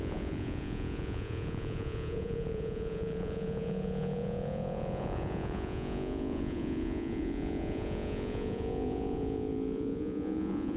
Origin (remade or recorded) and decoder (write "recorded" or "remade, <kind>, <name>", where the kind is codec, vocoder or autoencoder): remade, vocoder, Vocos